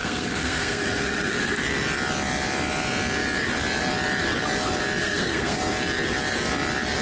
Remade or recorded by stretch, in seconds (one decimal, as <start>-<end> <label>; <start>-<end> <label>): 0.0-1.6 remade; 1.6-5.0 recorded; 5.0-5.6 remade; 5.6-7.0 recorded